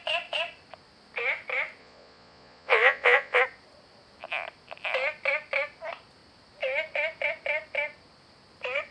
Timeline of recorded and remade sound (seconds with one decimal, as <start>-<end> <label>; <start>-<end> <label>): 0.0-1.8 recorded; 1.8-3.4 remade; 3.4-8.9 recorded